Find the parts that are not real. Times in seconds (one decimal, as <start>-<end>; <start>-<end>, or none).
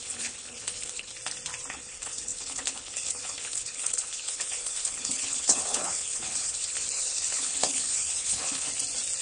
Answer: 0.0-1.1; 1.7-8.7